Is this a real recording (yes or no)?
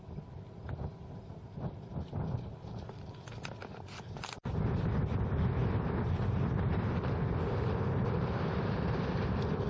yes